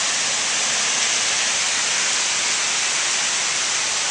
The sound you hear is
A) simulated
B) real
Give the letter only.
B